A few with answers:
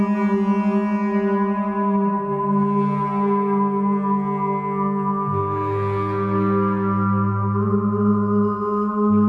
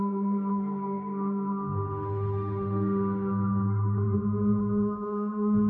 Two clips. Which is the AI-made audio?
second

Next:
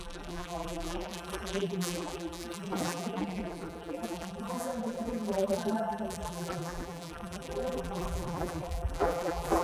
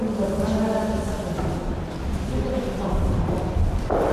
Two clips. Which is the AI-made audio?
first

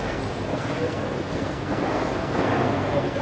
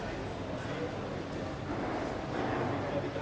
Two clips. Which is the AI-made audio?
first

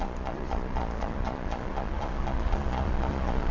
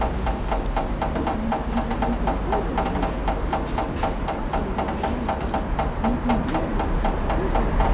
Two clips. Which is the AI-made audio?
first